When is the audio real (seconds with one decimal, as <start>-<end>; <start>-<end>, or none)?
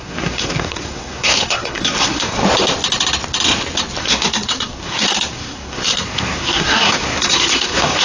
2.4-4.0